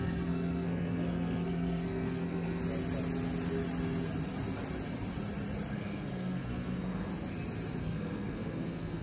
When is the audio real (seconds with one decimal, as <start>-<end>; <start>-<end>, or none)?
2.6-5.7; 7.1-7.8